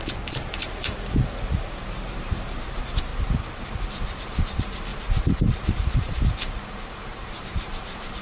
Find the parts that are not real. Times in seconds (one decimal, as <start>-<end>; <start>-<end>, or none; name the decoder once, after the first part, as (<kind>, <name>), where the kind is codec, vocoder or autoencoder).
0.0-8.2 (vocoder, BigVGAN v2)